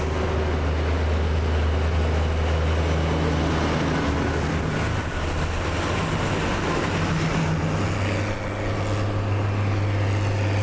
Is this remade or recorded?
recorded